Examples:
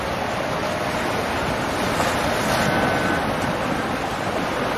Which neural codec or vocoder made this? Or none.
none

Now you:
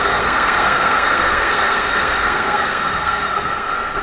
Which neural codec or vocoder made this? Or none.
codec, SNAC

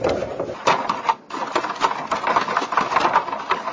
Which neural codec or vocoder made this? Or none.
none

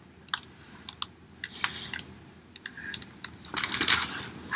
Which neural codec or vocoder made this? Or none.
none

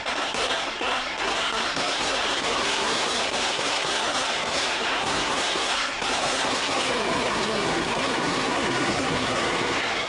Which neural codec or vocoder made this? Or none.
codec, SNAC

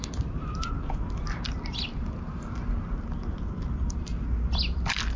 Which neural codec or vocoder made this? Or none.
none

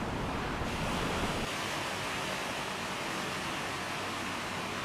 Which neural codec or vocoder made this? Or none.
none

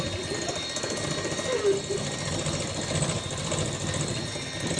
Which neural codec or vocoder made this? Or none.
none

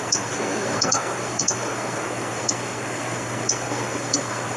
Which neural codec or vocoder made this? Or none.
codec, SNAC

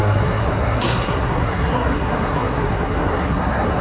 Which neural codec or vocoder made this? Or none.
codec, SNAC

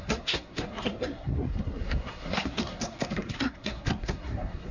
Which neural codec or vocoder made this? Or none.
codec, SNAC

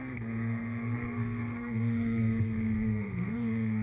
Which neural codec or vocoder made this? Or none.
codec, SNAC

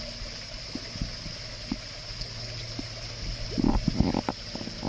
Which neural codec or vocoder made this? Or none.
none